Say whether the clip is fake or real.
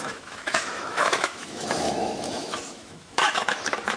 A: fake